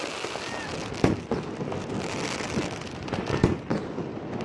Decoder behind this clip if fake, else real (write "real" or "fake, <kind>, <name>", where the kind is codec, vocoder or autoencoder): real